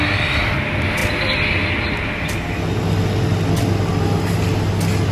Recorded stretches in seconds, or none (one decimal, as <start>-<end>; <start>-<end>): 0.0-5.1

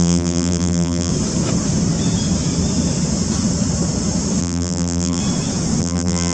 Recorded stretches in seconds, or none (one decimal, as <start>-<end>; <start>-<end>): 1.1-4.4; 5.2-5.8